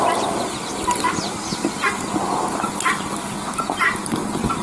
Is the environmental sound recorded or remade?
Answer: recorded